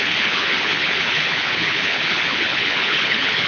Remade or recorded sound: remade